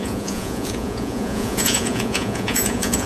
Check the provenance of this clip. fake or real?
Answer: fake